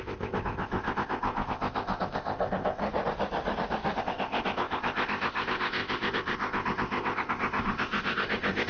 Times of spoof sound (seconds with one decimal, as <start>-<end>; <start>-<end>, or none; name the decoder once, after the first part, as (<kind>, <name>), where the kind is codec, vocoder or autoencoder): 0.0-2.8 (codec, ZipCodec); 4.0-8.7